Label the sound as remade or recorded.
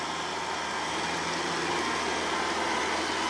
recorded